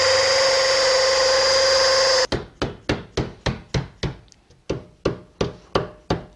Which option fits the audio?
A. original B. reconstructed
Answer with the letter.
A